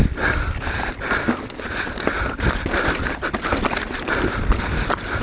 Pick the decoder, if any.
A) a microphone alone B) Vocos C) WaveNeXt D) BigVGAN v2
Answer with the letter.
A